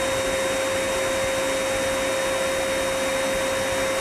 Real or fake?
real